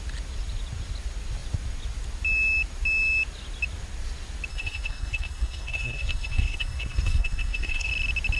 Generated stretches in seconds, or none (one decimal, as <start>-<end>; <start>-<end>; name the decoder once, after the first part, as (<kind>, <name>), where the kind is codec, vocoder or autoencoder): 4.5-7.9 (codec, SNAC)